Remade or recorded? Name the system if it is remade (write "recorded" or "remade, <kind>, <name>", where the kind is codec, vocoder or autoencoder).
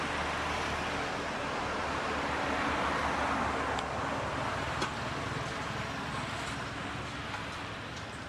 recorded